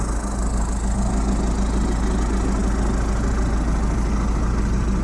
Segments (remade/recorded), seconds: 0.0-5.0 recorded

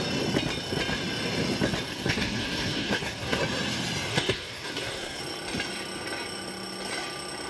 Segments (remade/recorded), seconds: 0.0-1.9 recorded; 1.9-3.4 remade; 3.4-4.1 recorded; 4.1-5.2 remade; 5.2-7.5 recorded

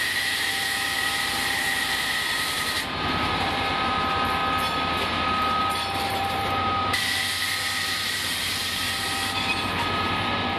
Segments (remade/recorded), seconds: 0.0-4.4 remade; 4.4-5.6 recorded; 5.6-10.6 remade

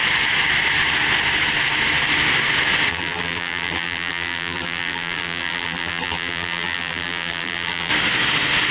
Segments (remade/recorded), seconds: 0.0-2.9 recorded; 2.9-7.9 remade; 7.9-8.7 recorded